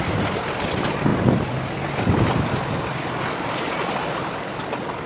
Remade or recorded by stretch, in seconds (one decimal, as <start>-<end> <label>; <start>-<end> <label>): 0.0-5.1 recorded